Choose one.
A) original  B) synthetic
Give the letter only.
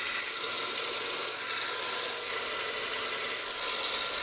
A